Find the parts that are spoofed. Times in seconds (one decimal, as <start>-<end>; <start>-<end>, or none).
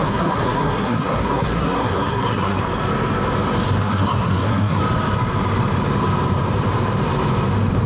0.0-2.6; 3.8-4.8